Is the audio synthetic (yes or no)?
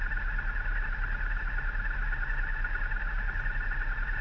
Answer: no